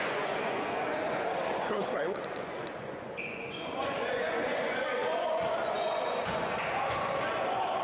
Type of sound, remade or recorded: remade